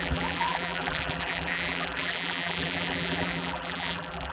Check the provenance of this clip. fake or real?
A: fake